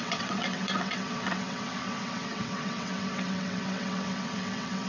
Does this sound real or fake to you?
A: fake